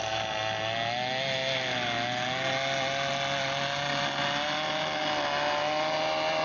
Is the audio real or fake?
real